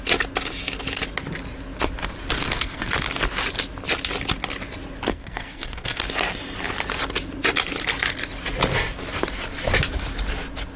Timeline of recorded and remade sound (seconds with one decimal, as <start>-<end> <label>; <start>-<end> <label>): 0.0-2.4 recorded; 2.4-2.9 remade; 2.9-5.1 recorded; 5.1-6.0 remade; 6.0-10.8 recorded